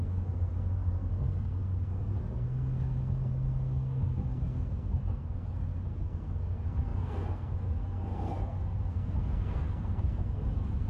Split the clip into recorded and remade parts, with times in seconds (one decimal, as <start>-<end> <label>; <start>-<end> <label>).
0.0-10.9 remade